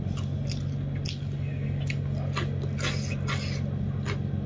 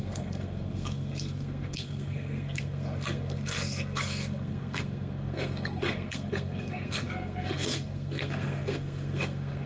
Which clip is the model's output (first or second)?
second